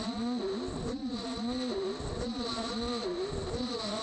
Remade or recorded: recorded